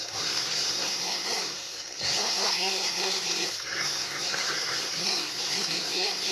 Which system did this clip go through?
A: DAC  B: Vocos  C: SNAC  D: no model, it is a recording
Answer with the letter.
C